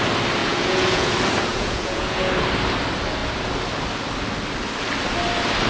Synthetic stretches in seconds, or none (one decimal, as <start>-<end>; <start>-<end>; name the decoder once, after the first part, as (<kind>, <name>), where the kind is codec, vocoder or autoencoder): 0.4-1.1 (vocoder, Vocos); 1.5-2.3